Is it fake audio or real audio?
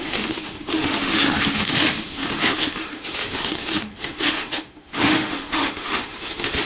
fake